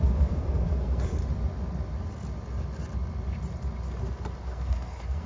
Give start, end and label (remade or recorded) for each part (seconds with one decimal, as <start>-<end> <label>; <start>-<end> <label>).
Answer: 0.0-1.2 remade; 1.2-4.4 recorded; 4.4-5.3 remade